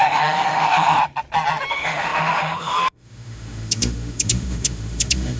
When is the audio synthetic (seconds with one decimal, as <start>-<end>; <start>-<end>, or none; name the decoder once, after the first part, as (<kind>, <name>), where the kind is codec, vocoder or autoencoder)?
0.0-1.0 (autoencoder, DAC-VAE); 1.7-5.4